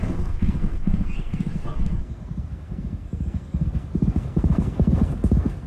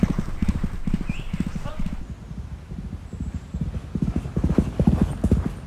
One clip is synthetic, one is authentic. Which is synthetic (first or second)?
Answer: first